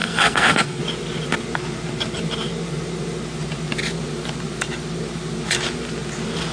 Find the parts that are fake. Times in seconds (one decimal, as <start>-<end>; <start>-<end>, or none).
0.0-0.8